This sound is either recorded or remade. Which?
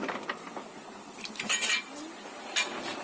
recorded